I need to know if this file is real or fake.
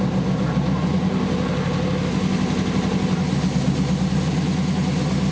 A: real